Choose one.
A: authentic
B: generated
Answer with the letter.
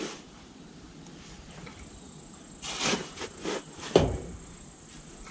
A